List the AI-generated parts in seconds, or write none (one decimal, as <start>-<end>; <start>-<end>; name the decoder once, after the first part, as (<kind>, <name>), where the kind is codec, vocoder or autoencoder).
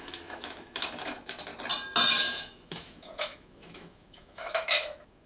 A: 0.0-1.5 (autoencoder, DAC-VAE); 2.1-5.3